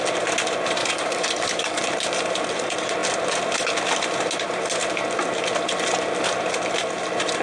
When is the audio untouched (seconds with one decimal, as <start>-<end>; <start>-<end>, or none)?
0.0-0.8; 1.8-7.4